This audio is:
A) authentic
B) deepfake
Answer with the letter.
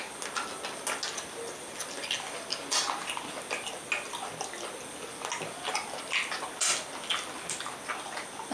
A